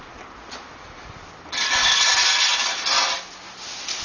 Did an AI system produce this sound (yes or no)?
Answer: no